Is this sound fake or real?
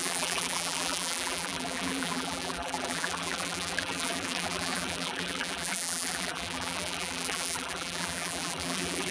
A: fake